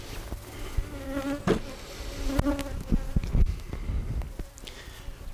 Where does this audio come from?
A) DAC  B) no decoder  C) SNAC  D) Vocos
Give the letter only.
B